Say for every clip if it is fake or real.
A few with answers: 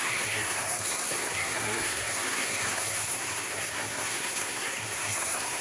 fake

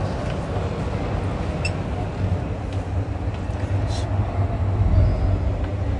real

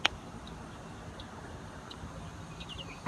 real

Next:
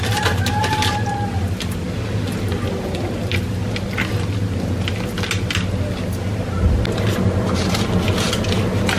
real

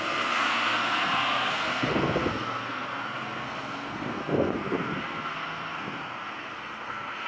fake